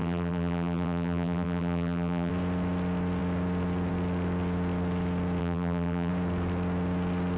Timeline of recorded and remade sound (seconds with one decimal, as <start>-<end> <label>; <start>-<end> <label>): 0.0-2.3 remade; 2.3-5.4 recorded; 5.4-6.1 remade; 6.1-7.4 recorded

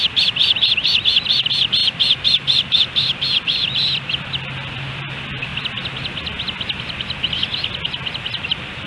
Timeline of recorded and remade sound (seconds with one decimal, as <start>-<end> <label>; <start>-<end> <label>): 0.0-5.5 remade; 5.5-8.4 recorded; 8.4-8.9 remade

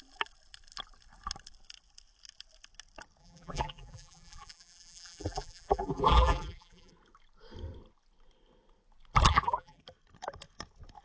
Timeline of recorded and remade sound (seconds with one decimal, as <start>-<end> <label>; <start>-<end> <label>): 0.0-3.2 recorded; 3.2-6.9 remade; 6.9-9.3 recorded; 9.3-9.8 remade; 9.8-11.0 recorded

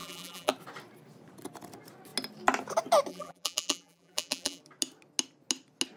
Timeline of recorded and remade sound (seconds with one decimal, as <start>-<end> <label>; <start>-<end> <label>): 0.0-0.5 remade; 0.5-3.1 recorded; 3.1-4.6 remade; 4.6-6.0 recorded

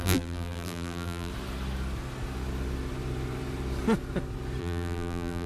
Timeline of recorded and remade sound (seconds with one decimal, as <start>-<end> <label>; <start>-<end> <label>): 0.0-1.3 remade; 1.3-4.6 recorded; 4.6-5.5 remade

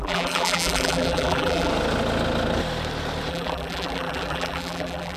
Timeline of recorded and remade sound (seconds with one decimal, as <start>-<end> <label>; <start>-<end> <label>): 0.0-1.7 remade; 1.7-3.3 recorded; 3.3-5.2 remade

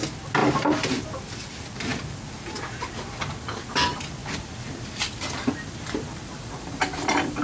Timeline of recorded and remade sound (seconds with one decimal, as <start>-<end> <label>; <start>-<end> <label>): 0.0-0.4 recorded; 0.4-1.0 remade; 1.0-4.2 recorded; 4.2-5.0 remade; 5.0-7.4 recorded

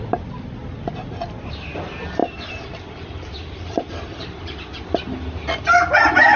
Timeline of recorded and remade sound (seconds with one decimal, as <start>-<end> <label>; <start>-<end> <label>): 0.0-0.6 remade; 0.6-1.4 recorded; 1.4-6.4 remade